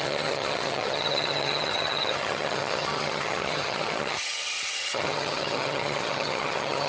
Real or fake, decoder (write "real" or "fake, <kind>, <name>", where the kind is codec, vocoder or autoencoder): fake, vocoder, HiFi-GAN